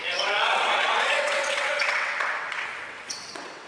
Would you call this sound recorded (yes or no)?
no